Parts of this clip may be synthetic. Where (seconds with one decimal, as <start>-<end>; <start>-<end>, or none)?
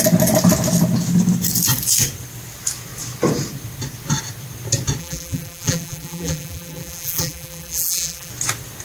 5.0-8.3